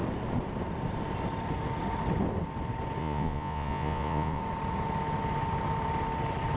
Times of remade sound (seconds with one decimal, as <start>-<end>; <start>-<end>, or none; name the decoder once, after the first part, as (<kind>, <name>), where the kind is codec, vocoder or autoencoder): 3.0-4.4 (vocoder, Vocos)